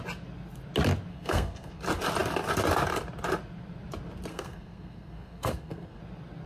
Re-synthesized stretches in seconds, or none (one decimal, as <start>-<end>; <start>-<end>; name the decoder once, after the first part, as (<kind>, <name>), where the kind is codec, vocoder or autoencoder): 1.1-1.8 (codec, SNAC); 4.3-6.0